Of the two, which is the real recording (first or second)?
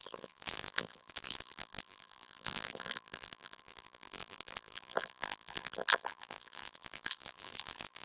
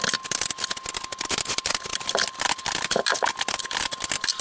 second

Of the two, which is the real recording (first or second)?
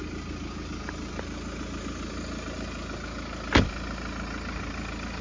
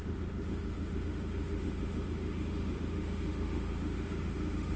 first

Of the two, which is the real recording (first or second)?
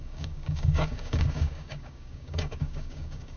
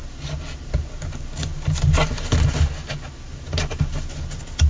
second